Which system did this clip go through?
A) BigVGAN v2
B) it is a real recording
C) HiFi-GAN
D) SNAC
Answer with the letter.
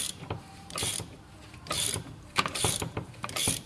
A